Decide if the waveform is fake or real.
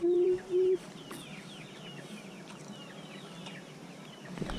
fake